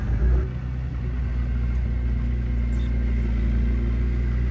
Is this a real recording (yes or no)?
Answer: yes